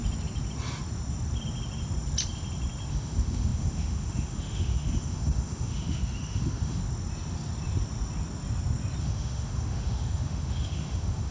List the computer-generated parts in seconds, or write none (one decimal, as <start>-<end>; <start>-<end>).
2.9-6.8; 9.0-11.3